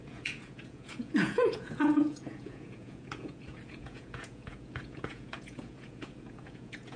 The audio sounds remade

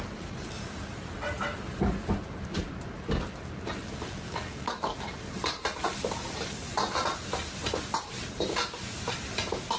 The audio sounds remade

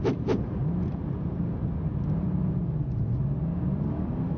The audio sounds recorded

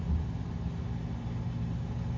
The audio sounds recorded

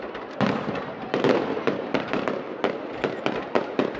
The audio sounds recorded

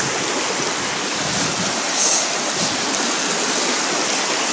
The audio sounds recorded